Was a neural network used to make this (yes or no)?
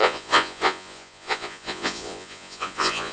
yes